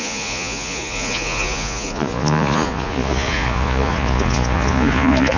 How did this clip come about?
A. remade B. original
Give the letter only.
A